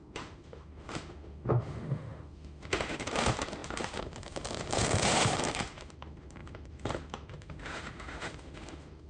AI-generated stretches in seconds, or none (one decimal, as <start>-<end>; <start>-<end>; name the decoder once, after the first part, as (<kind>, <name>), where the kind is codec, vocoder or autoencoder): 0.0-9.1 (autoencoder, DAC-VAE)